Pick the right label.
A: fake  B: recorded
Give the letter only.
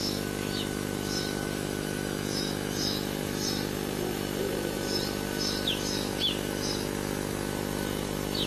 A